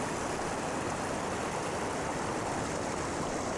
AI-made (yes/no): no